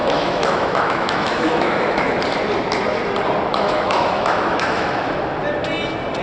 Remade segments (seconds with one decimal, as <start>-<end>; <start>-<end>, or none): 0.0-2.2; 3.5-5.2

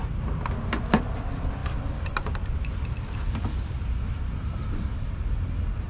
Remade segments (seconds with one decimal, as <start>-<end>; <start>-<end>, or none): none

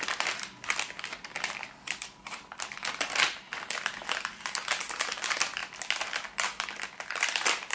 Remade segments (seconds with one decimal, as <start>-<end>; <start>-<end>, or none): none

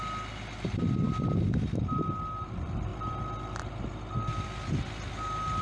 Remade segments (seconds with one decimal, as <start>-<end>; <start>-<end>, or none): none

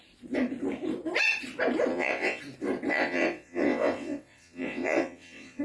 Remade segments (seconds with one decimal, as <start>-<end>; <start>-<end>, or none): 1.9-2.4; 2.9-5.6

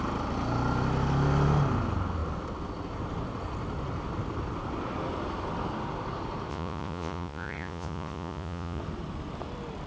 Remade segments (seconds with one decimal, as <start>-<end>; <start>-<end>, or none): 6.5-8.8

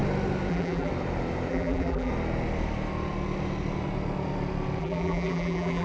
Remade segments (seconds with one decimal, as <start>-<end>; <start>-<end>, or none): 0.5-0.9; 1.5-2.1; 4.8-5.8

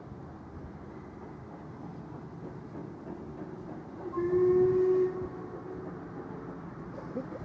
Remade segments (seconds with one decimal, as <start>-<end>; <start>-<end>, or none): none